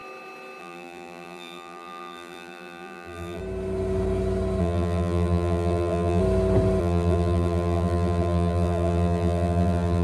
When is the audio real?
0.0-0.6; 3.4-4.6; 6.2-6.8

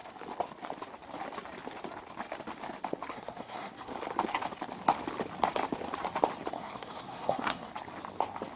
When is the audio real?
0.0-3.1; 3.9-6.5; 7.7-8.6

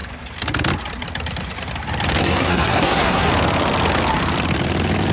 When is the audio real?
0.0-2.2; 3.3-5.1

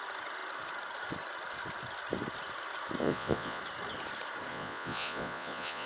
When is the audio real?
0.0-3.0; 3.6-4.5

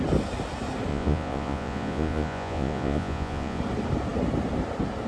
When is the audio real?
0.0-0.9; 3.6-5.1